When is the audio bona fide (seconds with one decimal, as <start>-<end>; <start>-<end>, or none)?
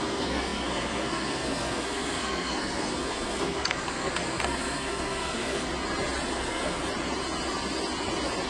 5.7-6.3; 6.8-8.5